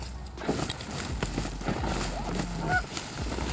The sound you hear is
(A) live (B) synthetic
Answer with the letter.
A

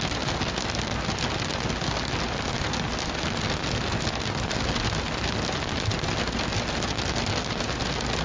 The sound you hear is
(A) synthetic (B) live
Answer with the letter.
B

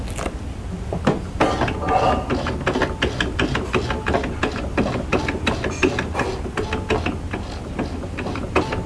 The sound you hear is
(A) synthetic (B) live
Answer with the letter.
B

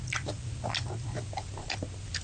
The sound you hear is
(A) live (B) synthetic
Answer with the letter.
A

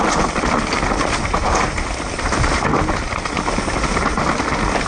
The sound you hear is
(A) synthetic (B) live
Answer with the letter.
B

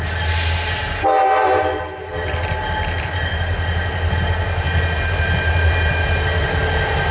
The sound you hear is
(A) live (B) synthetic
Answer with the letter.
A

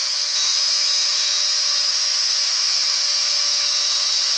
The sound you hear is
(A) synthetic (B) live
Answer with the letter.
A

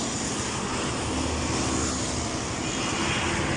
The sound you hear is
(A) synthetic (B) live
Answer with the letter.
B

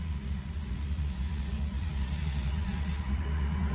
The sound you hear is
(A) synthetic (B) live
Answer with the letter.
A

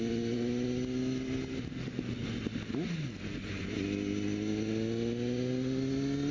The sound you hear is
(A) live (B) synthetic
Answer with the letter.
A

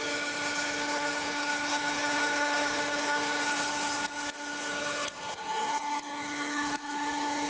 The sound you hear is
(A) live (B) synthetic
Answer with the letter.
B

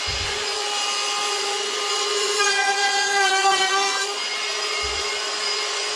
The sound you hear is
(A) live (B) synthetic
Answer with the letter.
B